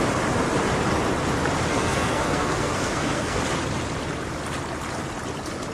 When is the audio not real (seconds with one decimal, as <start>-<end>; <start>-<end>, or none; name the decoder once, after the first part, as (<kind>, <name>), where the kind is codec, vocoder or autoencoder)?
1.7-3.4 (codec, SNAC)